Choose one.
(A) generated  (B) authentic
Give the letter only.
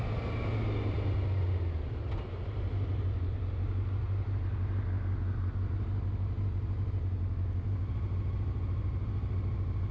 B